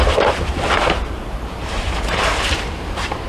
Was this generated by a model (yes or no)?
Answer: yes